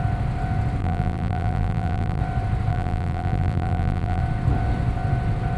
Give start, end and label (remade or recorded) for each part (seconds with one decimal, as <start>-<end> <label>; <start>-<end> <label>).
0.0-0.8 recorded; 0.8-2.2 remade; 2.2-2.7 recorded; 2.7-4.2 remade; 4.2-5.6 recorded